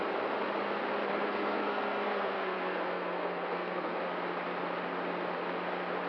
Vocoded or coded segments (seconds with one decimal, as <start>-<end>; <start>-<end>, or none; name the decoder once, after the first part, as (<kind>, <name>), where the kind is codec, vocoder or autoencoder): 1.1-4.0 (codec, SNAC)